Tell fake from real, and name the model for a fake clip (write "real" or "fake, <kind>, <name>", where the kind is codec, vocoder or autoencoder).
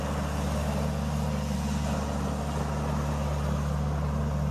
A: real